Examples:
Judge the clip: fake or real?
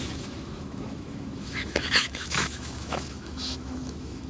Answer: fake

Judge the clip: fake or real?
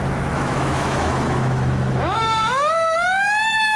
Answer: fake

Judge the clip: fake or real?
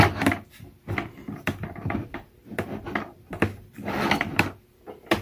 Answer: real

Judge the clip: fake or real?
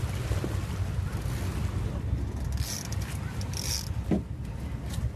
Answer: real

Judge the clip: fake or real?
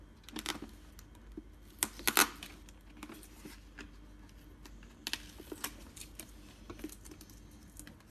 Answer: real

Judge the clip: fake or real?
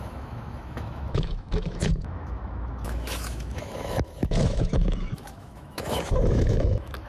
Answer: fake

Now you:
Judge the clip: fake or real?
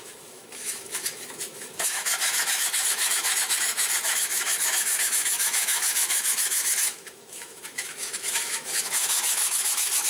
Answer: fake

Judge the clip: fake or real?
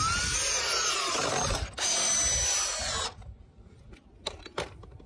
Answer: real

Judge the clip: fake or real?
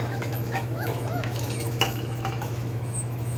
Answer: fake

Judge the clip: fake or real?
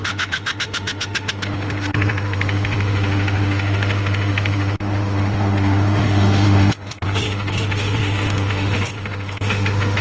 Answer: fake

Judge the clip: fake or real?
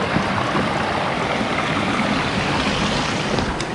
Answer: real